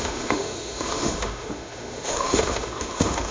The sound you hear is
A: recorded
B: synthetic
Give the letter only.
B